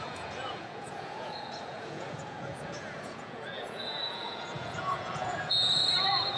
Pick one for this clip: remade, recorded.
remade